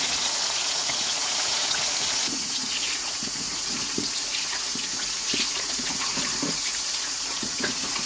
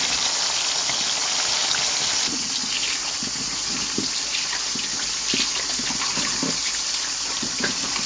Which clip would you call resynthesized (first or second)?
first